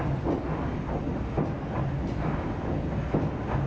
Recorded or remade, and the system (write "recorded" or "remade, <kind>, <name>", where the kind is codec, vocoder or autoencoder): recorded